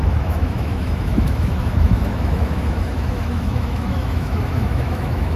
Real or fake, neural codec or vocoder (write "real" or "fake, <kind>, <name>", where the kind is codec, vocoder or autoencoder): fake, autoencoder, DAC-VAE